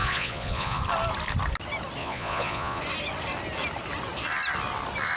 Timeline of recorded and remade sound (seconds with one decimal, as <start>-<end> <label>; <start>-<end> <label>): 0.0-0.8 remade; 0.8-2.0 recorded; 2.0-2.8 remade; 2.8-5.2 recorded